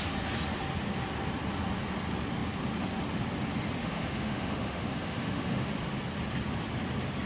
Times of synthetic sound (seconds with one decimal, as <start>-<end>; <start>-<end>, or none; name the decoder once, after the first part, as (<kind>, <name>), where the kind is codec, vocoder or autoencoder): 3.8-5.7 (autoencoder, DAC-VAE)